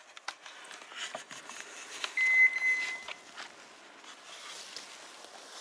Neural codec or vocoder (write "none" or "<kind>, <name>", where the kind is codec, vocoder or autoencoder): none